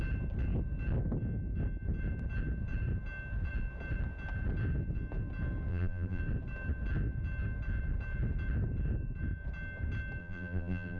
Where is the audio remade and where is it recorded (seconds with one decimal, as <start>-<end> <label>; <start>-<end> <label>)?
0.0-5.7 recorded; 5.7-6.2 remade; 6.2-10.2 recorded; 10.2-11.0 remade